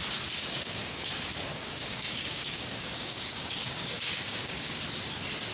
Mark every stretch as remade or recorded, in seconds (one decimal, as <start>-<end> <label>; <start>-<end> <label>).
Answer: 0.0-0.4 recorded; 0.4-1.1 remade; 1.1-1.5 recorded; 1.5-4.8 remade; 4.8-5.5 recorded